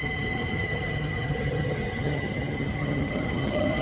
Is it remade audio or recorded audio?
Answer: remade